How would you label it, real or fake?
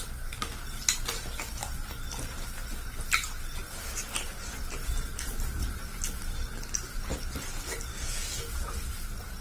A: real